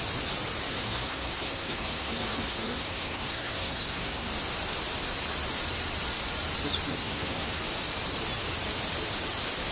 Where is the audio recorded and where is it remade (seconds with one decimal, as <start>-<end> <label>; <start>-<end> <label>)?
0.0-0.7 recorded; 0.7-4.3 remade; 4.3-6.9 recorded; 6.9-7.6 remade; 7.6-9.7 recorded